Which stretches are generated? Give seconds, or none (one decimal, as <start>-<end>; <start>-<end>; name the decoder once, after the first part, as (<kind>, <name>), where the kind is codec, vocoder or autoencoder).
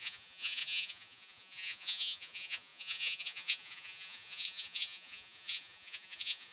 0.0-6.5 (vocoder, Vocos)